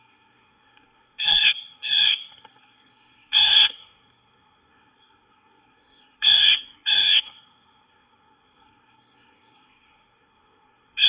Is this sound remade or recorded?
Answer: remade